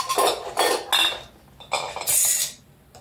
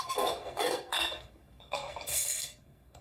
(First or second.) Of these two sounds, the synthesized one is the second